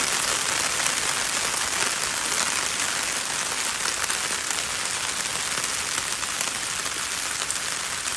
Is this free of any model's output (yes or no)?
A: yes